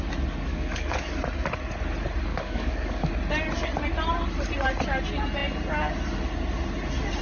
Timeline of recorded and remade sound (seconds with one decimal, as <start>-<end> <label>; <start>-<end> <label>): 0.0-0.5 recorded; 0.5-1.1 remade; 1.1-2.3 recorded; 2.3-3.1 remade; 3.1-7.2 recorded